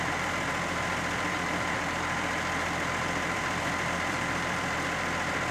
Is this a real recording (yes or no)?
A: no